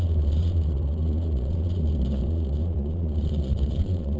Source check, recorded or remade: remade